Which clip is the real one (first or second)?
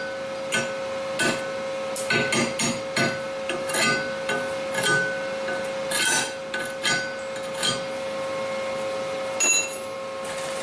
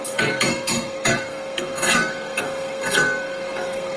first